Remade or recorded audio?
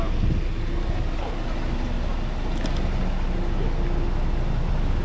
recorded